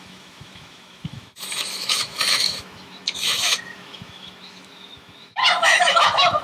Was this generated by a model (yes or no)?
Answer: yes